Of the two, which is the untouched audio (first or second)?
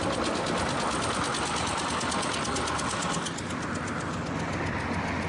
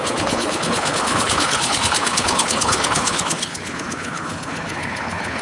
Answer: first